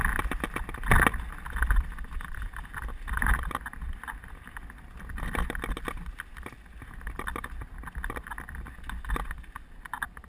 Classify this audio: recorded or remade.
recorded